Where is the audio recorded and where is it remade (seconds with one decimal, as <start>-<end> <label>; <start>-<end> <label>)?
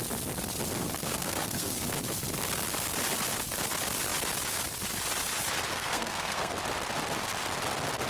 0.0-0.8 recorded; 0.8-2.0 remade; 2.0-5.7 recorded; 5.7-6.5 remade; 6.5-8.1 recorded